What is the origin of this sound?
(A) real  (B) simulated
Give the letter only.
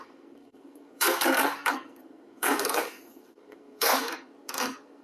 B